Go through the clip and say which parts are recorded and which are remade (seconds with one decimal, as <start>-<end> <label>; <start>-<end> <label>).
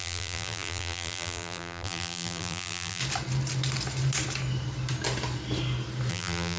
0.0-3.0 remade; 3.0-6.1 recorded; 6.1-6.6 remade